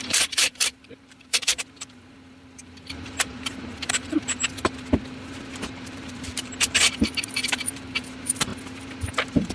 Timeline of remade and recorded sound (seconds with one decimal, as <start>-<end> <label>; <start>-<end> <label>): 0.0-4.4 remade; 4.4-5.5 recorded; 5.5-8.5 remade; 8.5-9.1 recorded; 9.1-9.5 remade